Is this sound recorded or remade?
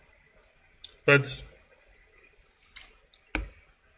recorded